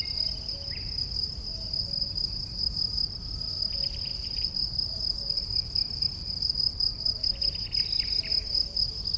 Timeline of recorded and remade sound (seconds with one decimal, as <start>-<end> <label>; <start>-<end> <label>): 0.0-4.1 recorded; 4.1-7.4 remade; 7.4-9.2 recorded